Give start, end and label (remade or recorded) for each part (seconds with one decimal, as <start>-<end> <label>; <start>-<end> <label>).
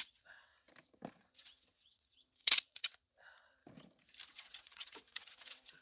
0.0-0.5 remade; 0.5-1.1 recorded; 1.1-3.1 remade; 3.1-4.3 recorded; 4.3-5.8 remade